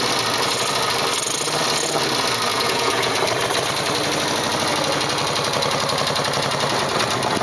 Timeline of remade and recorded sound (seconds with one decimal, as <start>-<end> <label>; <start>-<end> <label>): 0.0-2.5 recorded; 2.5-3.2 remade; 3.2-7.4 recorded